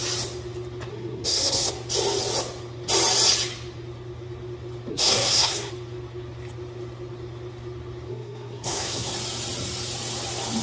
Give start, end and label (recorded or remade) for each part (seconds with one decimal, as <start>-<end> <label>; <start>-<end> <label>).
0.0-0.9 recorded; 0.9-1.7 remade; 1.7-4.9 recorded; 4.9-5.7 remade; 5.7-8.1 recorded; 8.1-9.1 remade; 9.1-10.6 recorded